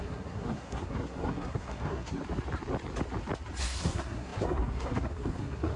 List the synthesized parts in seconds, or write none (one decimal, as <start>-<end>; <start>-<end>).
0.0-2.2; 3.6-5.8